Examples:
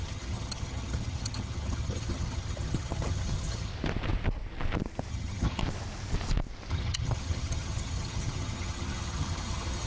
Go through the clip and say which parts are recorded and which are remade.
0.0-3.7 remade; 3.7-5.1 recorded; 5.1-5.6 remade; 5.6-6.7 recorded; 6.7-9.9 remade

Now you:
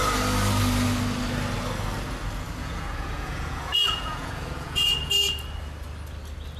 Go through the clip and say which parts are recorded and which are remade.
0.0-2.6 recorded; 2.6-5.1 remade; 5.1-6.6 recorded

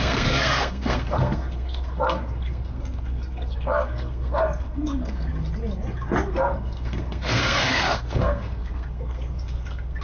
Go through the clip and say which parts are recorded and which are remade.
0.0-5.3 remade; 5.3-6.3 recorded; 6.3-10.0 remade

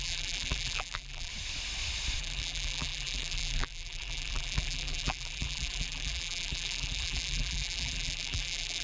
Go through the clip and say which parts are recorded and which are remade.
0.0-1.3 remade; 1.3-2.2 recorded; 2.2-8.8 remade

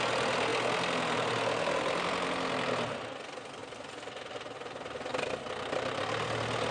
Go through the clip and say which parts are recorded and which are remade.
0.0-6.7 recorded

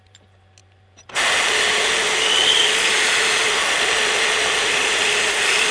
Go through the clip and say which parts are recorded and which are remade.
0.0-5.7 recorded